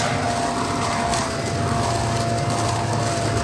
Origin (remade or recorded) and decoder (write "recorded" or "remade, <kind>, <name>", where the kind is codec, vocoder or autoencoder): recorded